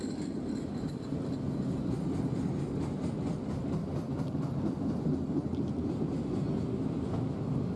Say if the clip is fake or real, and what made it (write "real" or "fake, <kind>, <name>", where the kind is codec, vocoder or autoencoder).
real